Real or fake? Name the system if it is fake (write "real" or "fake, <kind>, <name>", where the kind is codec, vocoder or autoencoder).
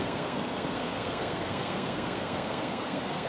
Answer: fake, codec, SNAC